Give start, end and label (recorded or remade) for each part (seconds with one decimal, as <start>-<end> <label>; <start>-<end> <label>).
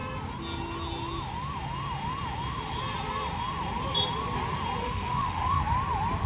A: 0.0-4.8 recorded; 4.8-5.6 remade; 5.6-6.3 recorded